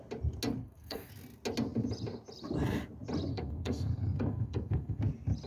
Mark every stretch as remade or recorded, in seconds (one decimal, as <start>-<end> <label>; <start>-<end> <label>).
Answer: 0.0-0.6 recorded; 0.6-1.1 remade; 1.1-3.3 recorded; 3.3-5.0 remade; 5.0-5.5 recorded